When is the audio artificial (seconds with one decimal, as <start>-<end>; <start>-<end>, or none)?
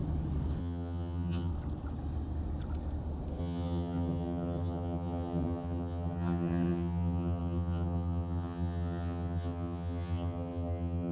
0.6-1.5; 3.4-11.1